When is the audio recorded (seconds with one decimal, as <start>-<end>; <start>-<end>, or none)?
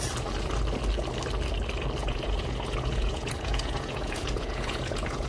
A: 0.0-2.0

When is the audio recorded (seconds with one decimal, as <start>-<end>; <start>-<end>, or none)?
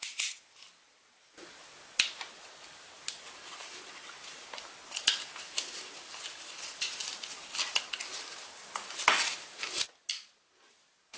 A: 0.0-11.2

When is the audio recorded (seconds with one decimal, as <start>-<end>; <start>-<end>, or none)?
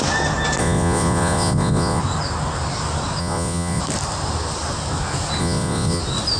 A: 0.0-0.6; 2.0-3.2; 3.8-5.4; 6.0-6.4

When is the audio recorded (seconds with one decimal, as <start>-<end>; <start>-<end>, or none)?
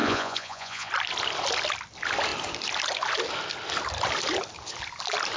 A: 0.9-5.4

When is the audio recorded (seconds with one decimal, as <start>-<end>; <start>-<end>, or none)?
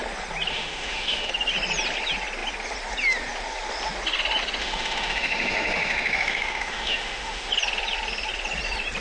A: 0.0-0.5; 1.3-4.6; 7.5-9.0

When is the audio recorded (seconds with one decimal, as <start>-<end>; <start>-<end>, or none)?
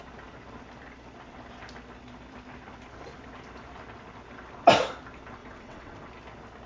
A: 0.0-5.4; 6.1-6.7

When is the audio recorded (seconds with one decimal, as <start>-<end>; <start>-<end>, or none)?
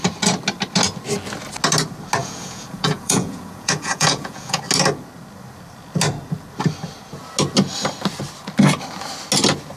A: 0.0-2.2; 4.6-9.8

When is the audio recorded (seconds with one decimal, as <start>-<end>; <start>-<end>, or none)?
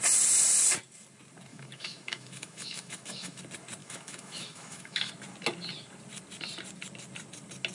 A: 0.0-1.5; 3.4-3.8; 5.1-7.7